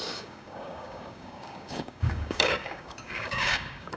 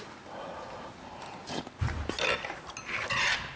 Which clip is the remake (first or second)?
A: first